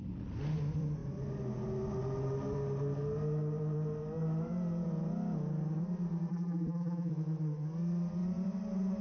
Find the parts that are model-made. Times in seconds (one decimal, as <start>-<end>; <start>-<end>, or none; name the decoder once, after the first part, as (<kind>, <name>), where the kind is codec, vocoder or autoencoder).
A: 6.3-7.1 (vocoder, BigVGAN v2)